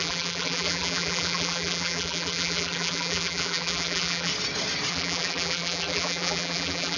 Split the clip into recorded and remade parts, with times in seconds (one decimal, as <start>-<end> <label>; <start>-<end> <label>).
0.0-4.3 remade; 4.3-4.9 recorded; 4.9-7.0 remade